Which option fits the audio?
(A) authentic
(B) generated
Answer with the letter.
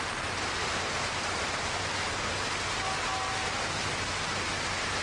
A